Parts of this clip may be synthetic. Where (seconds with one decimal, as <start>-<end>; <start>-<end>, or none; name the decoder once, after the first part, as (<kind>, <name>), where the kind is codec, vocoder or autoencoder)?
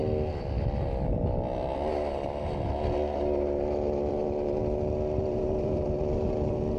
4.1-4.6 (vocoder, BigVGAN v2); 5.2-6.8